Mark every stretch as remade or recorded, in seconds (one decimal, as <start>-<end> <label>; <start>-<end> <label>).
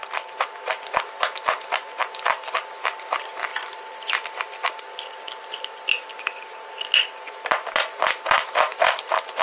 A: 0.0-9.4 recorded